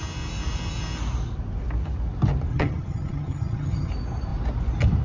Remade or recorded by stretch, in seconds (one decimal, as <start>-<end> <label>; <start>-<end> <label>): 0.0-2.5 recorded; 2.5-3.9 remade; 3.9-5.0 recorded